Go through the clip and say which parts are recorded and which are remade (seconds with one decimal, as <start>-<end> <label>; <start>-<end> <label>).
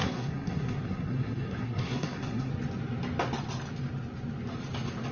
0.0-2.5 remade; 2.5-5.1 recorded